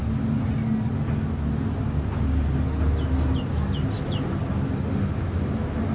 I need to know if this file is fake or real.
real